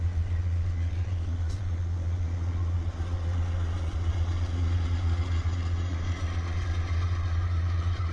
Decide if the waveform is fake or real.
fake